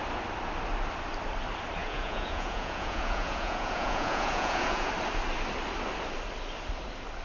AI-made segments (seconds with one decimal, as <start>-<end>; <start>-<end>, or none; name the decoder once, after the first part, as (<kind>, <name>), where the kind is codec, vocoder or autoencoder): 1.8-4.9 (vocoder, Vocos)